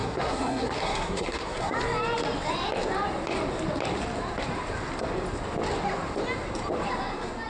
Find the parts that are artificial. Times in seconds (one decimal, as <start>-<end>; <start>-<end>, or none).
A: 0.0-1.7